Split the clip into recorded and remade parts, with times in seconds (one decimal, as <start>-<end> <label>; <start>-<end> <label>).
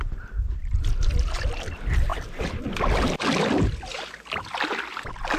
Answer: 0.0-2.1 recorded; 2.1-2.7 remade; 2.7-5.4 recorded